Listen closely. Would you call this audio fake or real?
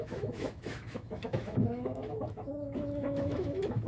fake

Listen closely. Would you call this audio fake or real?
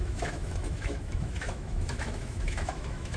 fake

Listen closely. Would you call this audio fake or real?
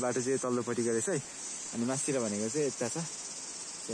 real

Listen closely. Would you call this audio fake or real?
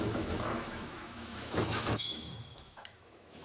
fake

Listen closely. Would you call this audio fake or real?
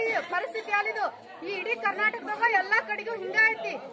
real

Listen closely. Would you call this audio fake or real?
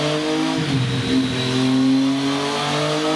real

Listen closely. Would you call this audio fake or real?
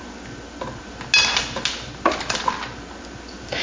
real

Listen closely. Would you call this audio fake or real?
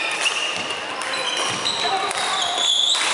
real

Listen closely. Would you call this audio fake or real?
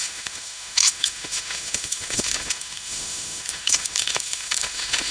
fake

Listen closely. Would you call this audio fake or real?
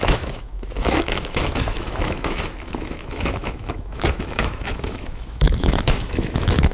fake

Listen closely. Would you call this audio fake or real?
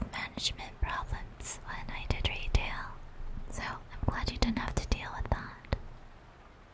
real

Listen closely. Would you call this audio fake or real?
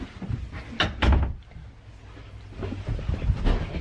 real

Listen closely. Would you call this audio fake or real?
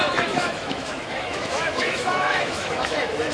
fake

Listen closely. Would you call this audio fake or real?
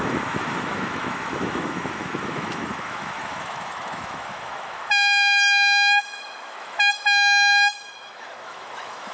fake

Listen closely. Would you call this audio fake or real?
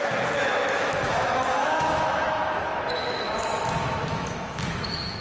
fake